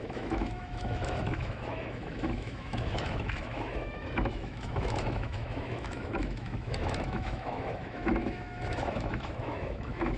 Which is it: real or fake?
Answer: fake